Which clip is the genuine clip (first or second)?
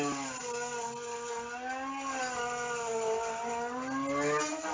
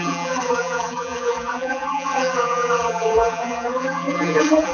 first